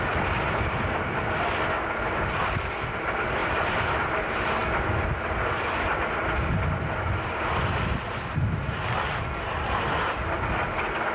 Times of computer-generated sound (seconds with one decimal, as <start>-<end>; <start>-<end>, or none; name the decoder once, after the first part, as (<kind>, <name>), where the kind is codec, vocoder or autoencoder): 3.4-3.9 (vocoder, BigVGAN v2)